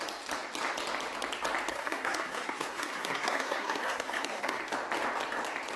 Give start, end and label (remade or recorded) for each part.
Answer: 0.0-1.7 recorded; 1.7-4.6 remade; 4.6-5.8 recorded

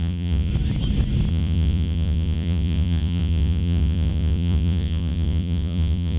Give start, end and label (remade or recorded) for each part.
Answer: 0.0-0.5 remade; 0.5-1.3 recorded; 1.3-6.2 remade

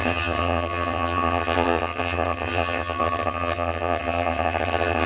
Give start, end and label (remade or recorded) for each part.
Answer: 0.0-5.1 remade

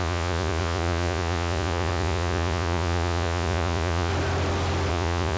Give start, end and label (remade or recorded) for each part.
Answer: 0.0-4.1 remade; 4.1-4.9 recorded; 4.9-5.4 remade

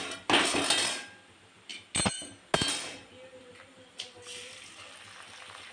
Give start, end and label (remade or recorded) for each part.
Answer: 0.0-5.7 recorded